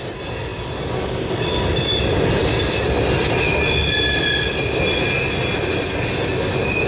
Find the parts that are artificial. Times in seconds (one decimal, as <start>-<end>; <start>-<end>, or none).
none

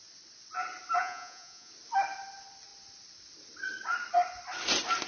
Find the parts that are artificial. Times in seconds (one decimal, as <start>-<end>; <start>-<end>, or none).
1.0-1.7